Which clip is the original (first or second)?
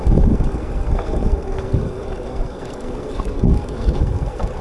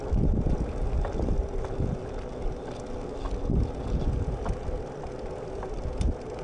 second